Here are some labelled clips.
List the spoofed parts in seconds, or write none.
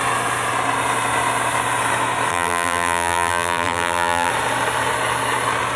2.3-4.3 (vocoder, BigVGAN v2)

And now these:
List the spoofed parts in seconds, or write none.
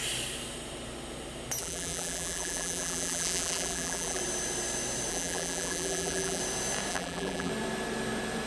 1.6-4.2 (vocoder, BigVGAN v2); 5.1-6.4; 6.9-7.5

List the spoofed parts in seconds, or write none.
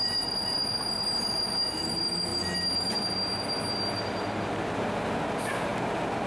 none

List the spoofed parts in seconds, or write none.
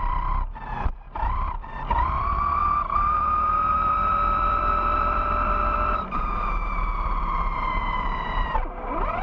0.0-2.6 (vocoder, BigVGAN v2); 3.2-9.2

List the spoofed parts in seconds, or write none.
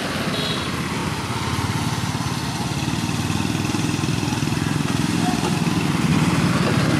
none